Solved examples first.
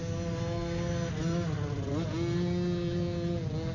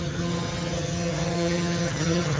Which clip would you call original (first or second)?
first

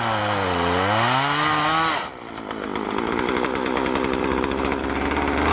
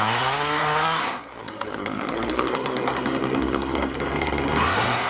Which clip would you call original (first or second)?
first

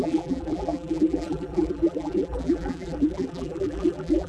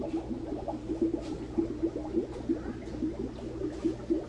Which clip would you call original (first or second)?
second